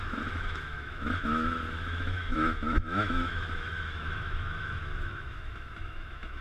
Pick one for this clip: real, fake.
fake